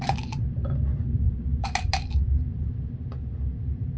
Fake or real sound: real